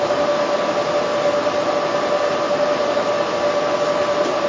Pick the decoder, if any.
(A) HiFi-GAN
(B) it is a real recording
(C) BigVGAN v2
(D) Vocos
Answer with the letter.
B